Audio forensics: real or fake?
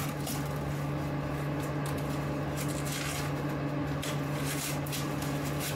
real